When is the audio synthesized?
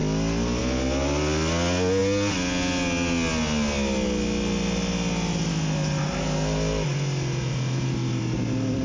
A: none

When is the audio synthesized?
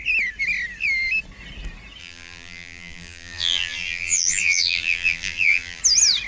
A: 2.0-5.8 (vocoder, BigVGAN v2)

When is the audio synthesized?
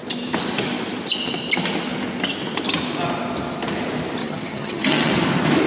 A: 4.2-5.1 (vocoder, HiFi-GAN)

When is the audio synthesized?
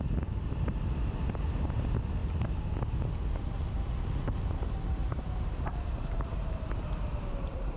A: 5.0-7.8 (vocoder, BigVGAN v2)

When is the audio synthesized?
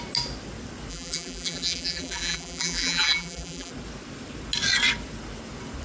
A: 0.9-3.7 (vocoder, BigVGAN v2)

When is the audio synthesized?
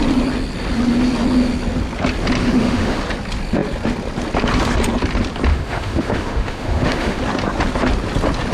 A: 2.4-3.0 (autoencoder, DAC-VAE); 5.5-7.2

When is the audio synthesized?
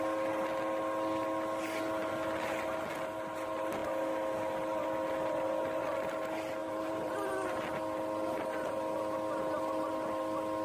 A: 6.6-7.3 (vocoder, BigVGAN v2)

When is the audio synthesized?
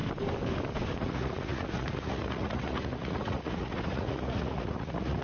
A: 1.0-5.2 (vocoder, Vocos)